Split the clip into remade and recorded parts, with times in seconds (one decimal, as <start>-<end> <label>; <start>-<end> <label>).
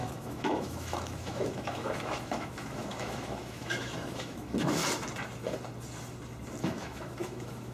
0.0-4.8 remade; 4.8-6.6 recorded; 6.6-7.7 remade